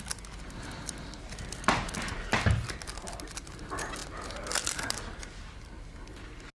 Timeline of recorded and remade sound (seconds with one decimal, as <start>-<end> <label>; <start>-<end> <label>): 0.0-6.5 recorded